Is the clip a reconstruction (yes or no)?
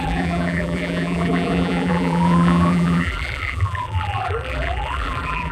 yes